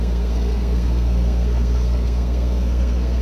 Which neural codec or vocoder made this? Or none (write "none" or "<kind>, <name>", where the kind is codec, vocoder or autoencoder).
codec, SNAC